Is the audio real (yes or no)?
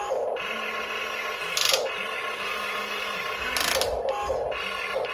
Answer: yes